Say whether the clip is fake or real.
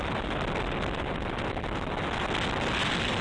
real